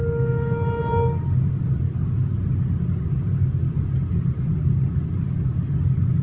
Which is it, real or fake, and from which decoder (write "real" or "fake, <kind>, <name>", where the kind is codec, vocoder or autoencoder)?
real